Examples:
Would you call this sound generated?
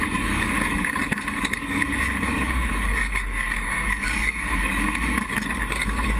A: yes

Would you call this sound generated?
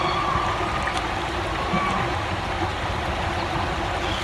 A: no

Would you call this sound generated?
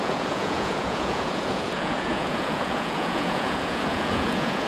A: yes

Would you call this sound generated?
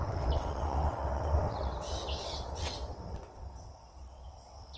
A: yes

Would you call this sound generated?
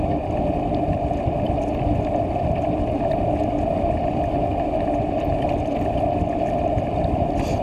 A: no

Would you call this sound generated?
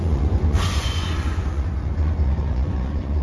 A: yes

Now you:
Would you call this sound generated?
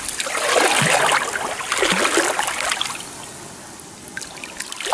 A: no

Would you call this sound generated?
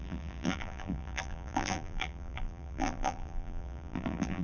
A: yes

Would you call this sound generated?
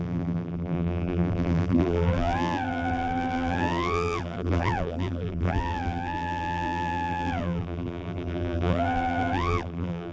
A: yes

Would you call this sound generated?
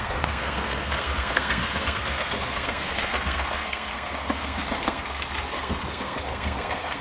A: yes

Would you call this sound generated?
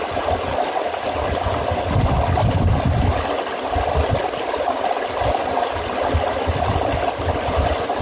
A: no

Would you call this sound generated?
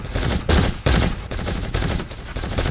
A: yes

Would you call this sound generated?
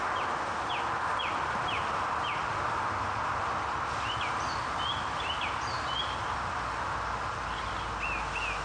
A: no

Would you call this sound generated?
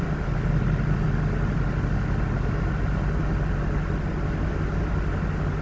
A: no